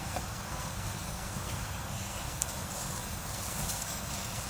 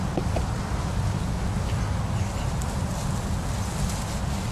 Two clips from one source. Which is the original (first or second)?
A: second